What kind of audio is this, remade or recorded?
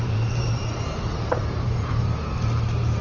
remade